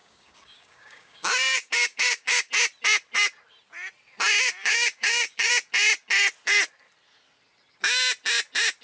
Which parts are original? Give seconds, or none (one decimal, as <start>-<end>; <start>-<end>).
2.5-4.6; 5.5-8.8